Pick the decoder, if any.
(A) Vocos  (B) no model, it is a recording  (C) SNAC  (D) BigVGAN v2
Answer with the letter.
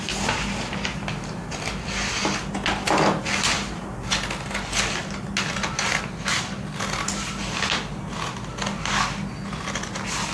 B